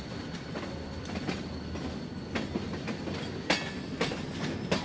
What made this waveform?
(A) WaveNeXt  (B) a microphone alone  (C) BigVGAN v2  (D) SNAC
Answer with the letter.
B